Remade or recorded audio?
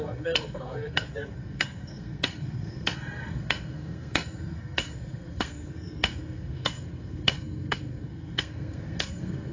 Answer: remade